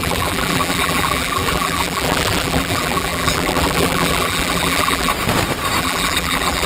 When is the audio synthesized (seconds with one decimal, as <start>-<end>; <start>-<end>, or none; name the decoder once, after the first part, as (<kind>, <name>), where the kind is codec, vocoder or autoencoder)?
0.0-5.1 (vocoder, BigVGAN v2); 5.8-6.7

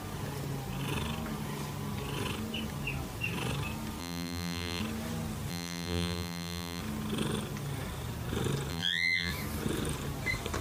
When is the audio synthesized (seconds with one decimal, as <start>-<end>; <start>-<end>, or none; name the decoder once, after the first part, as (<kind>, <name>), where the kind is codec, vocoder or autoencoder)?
4.0-4.8 (vocoder, BigVGAN v2); 5.5-6.8; 8.7-9.3

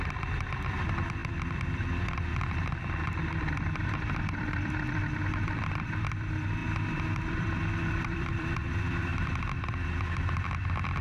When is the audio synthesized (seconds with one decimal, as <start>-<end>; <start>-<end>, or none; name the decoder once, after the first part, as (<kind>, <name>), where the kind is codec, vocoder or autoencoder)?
0.0-11.0 (vocoder, BigVGAN v2)

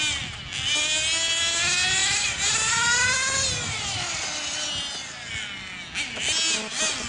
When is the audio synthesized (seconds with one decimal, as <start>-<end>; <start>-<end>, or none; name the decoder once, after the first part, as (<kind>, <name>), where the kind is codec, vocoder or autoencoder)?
none

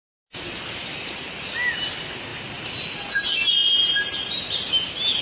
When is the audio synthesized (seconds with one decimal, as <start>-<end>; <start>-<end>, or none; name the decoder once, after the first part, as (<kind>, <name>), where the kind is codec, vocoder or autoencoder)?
0.8-1.4 (vocoder, BigVGAN v2); 3.6-4.7

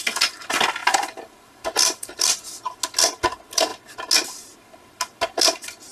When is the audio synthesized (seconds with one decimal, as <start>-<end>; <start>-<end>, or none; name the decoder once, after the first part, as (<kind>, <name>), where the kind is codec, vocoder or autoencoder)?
0.8-2.8 (vocoder, BigVGAN v2)